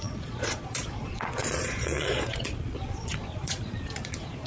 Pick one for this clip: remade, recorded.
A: remade